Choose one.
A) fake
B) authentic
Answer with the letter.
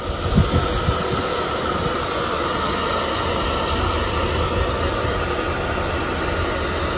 B